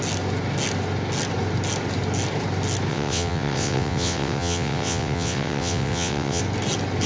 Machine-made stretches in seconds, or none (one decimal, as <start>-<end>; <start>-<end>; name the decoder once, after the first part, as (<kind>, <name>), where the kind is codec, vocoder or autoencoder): 2.9-6.4 (vocoder, WaveNeXt)